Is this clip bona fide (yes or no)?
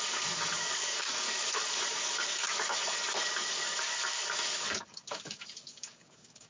no